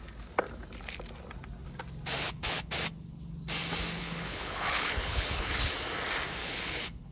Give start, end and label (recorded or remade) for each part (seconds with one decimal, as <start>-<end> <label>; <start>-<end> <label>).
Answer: 0.0-2.2 recorded; 2.2-2.7 remade; 2.7-4.0 recorded; 4.0-5.7 remade; 5.7-6.4 recorded; 6.4-7.1 remade

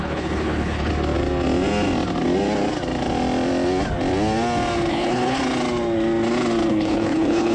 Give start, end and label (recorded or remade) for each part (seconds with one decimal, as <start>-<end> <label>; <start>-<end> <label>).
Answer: 0.0-0.9 remade; 0.9-4.9 recorded; 4.9-5.4 remade; 5.4-6.7 recorded; 6.7-7.5 remade

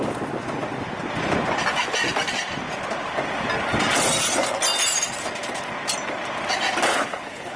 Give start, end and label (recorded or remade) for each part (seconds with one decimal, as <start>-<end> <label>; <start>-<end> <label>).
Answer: 0.0-6.9 recorded; 6.9-7.6 remade

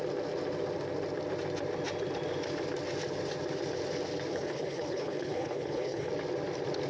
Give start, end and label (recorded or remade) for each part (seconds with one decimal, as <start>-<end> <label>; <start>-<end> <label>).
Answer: 0.0-4.3 recorded; 4.3-6.1 remade; 6.1-6.9 recorded

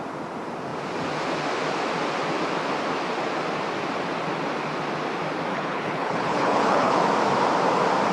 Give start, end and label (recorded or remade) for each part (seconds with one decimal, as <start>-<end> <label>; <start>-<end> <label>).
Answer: 0.0-5.5 recorded; 5.5-7.0 remade; 7.0-8.1 recorded

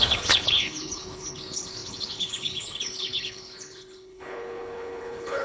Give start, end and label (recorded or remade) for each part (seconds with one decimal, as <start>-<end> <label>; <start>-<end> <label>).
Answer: 0.0-5.4 remade

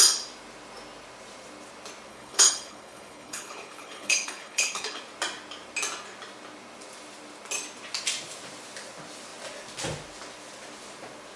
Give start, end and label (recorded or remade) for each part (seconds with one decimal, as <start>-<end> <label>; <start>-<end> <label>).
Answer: 0.0-2.1 recorded; 2.1-5.0 remade; 5.0-11.4 recorded